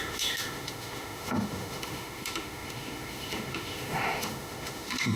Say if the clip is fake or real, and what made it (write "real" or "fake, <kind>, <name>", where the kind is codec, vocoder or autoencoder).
fake, autoencoder, DAC-VAE